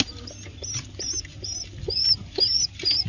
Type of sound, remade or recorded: recorded